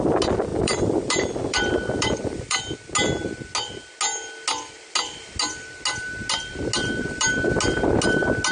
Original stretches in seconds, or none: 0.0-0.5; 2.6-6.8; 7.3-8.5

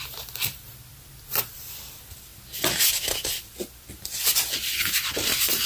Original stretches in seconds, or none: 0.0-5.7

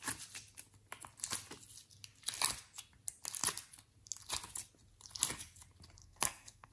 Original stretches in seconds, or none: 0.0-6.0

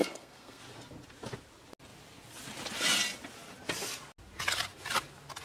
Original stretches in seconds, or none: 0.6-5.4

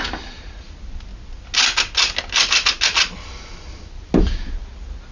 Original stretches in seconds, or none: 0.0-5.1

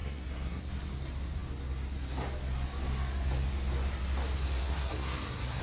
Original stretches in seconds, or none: 0.7-4.6